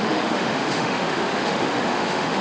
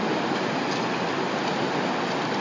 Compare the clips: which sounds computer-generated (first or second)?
first